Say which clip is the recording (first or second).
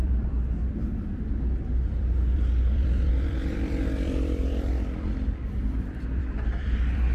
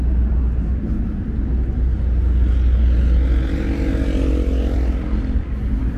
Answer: second